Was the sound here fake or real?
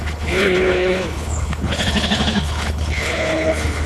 fake